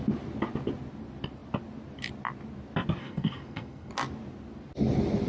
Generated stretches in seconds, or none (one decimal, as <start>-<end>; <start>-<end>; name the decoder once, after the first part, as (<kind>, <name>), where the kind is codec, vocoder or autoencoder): 3.0-3.9 (codec, SNAC)